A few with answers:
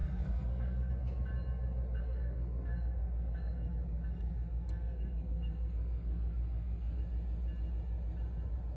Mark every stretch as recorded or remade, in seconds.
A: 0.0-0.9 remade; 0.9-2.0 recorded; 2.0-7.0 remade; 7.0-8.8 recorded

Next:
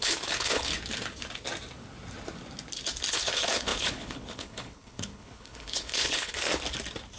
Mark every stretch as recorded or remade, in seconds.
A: 0.0-0.7 remade; 0.7-3.1 recorded; 3.1-6.5 remade; 6.5-7.2 recorded

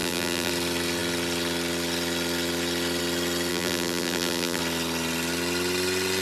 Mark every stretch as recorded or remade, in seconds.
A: 0.0-0.5 remade; 0.5-3.5 recorded; 3.5-4.6 remade; 4.6-6.2 recorded

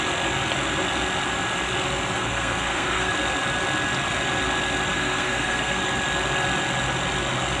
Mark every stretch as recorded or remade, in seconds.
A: 0.0-2.2 recorded; 2.2-3.1 remade; 3.1-4.9 recorded; 4.9-5.8 remade; 5.8-7.6 recorded